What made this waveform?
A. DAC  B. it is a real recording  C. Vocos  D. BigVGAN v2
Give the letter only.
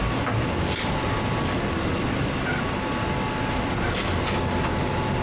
B